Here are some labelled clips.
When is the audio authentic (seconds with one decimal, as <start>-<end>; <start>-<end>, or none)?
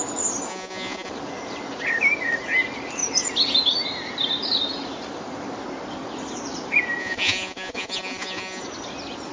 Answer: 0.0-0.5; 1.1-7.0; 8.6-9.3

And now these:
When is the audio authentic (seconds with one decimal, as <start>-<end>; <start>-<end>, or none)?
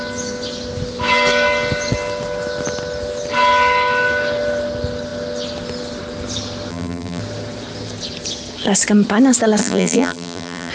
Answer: 0.0-6.7; 7.2-9.6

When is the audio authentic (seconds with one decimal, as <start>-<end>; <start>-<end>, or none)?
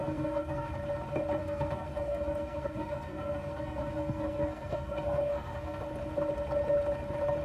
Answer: 0.7-1.4; 5.8-7.4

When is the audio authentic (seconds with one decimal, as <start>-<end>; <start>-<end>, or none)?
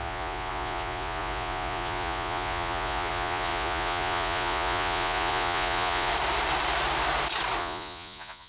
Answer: 6.1-7.6